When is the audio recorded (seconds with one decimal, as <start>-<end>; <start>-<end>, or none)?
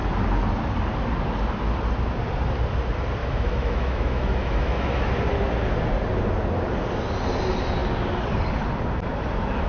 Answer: 0.0-3.2; 5.1-9.7